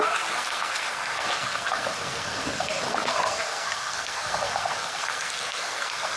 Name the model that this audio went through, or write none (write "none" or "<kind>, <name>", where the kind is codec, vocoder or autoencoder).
codec, SNAC